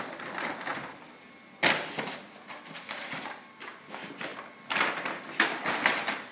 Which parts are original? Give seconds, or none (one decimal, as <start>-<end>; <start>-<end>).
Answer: 0.0-6.3